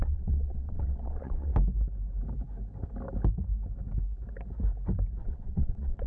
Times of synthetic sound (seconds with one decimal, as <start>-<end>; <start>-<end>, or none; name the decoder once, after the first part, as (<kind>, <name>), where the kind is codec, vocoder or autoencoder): 0.0-1.5 (vocoder, WaveNeXt); 5.2-6.1